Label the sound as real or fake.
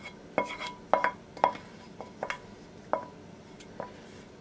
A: real